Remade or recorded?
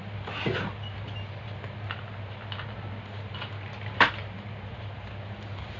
recorded